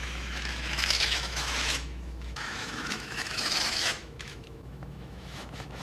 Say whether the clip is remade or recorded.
remade